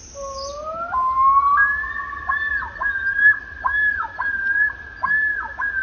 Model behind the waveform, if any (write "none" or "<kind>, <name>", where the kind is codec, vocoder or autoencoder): none